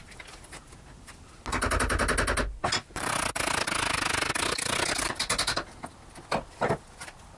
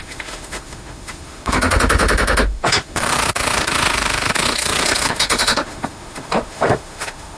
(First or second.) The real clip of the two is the first